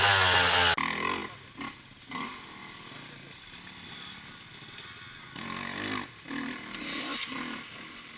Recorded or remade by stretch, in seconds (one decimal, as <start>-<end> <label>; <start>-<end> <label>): 0.0-8.2 recorded